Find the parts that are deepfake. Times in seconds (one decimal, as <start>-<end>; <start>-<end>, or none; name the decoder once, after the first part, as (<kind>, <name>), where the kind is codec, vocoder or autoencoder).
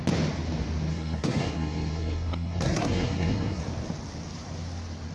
0.9-3.6 (codec, SNAC)